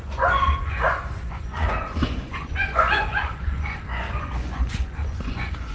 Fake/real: fake